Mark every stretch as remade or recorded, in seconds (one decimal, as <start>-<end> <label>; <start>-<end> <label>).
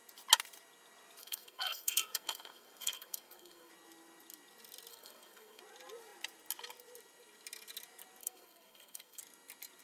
0.0-1.2 recorded; 1.2-3.7 remade; 3.7-4.9 recorded; 4.9-5.6 remade; 5.6-8.2 recorded; 8.2-9.2 remade; 9.2-9.8 recorded